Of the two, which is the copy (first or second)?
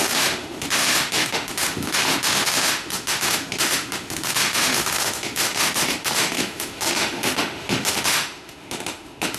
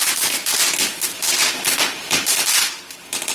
first